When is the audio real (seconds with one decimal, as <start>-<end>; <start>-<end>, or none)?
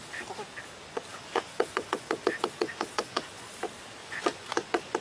0.0-1.1; 3.6-4.0